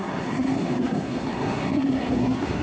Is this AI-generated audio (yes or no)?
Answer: yes